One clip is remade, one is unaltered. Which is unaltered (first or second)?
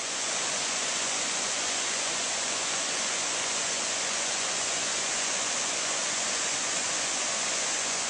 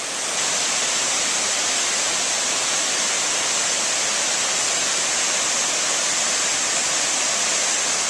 second